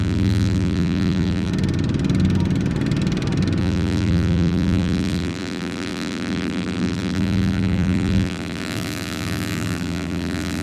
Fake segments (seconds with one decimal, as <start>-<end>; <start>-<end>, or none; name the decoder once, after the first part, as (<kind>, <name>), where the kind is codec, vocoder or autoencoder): 0.0-1.5 (vocoder, BigVGAN v2); 3.6-10.6

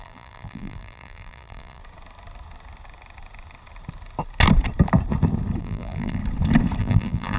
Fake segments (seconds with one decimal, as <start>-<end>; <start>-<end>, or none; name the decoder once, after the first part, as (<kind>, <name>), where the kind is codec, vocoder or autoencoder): 0.0-1.8 (vocoder, BigVGAN v2); 5.6-6.2; 6.8-7.4

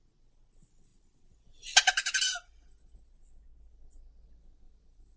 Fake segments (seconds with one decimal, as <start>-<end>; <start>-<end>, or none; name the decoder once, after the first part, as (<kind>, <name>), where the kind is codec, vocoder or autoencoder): none

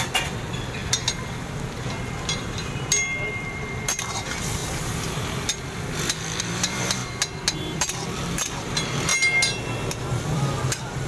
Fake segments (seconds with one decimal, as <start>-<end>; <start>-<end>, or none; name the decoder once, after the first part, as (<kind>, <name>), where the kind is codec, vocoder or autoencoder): 0.0-0.8 (vocoder, BigVGAN v2); 2.4-4.6; 6.4-7.0; 7.6-9.1; 10.0-11.1

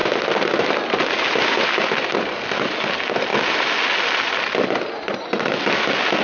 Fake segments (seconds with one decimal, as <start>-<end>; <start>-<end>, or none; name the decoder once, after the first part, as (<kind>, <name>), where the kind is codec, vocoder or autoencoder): 0.0-0.7 (vocoder, BigVGAN v2)

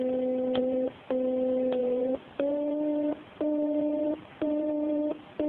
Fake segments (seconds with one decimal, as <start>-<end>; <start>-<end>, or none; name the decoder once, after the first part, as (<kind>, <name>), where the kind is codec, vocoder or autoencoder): 0.6-1.1 (vocoder, BigVGAN v2); 1.8-5.1